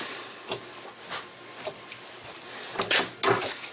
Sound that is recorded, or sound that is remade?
recorded